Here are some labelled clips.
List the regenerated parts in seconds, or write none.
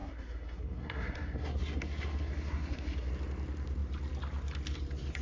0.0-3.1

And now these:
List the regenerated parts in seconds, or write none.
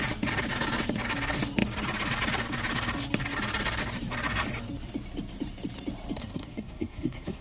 6.2-7.4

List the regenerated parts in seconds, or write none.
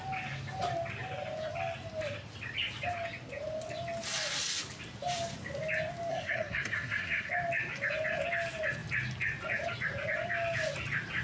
6.1-7.3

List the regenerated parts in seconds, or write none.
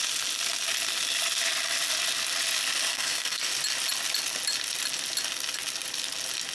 2.9-3.4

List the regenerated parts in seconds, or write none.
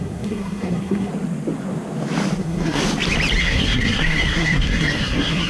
0.0-1.1; 2.4-2.8; 3.4-5.5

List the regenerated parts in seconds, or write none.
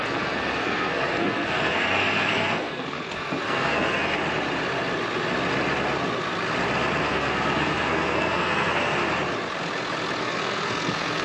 0.0-4.2; 7.0-9.0; 10.2-11.2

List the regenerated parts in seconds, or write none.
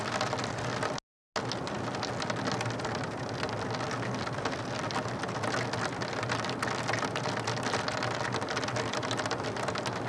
none